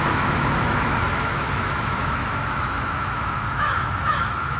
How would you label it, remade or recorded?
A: remade